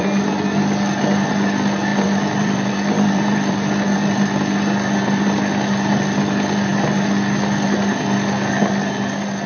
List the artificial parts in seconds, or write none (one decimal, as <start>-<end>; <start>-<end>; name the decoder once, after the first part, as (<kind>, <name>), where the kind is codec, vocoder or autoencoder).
1.9-3.5 (vocoder, BigVGAN v2)